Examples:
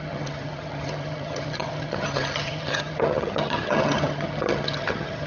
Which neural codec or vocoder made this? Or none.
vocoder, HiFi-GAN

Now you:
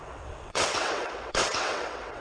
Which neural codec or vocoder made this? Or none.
vocoder, WaveNeXt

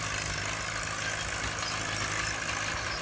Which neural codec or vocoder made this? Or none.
none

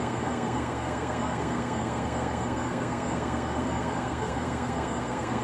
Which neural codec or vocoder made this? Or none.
codec, SNAC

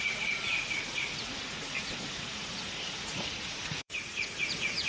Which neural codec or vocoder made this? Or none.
vocoder, Vocos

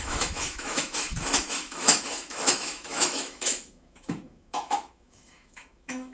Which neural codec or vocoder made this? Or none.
autoencoder, DAC-VAE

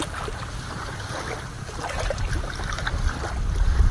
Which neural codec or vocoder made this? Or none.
none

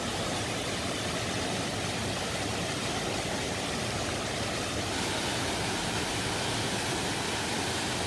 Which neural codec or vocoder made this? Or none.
none